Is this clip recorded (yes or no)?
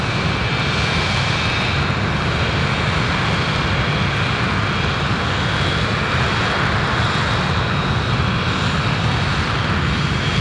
yes